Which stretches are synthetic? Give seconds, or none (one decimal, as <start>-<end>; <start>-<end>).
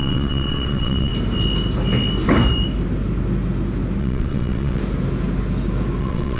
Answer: 0.0-1.1; 4.0-4.8; 6.0-6.4